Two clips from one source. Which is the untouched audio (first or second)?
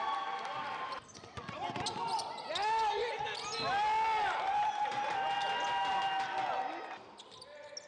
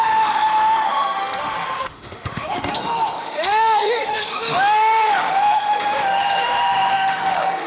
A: first